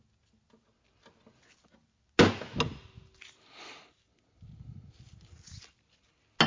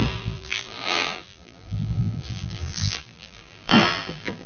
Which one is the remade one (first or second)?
second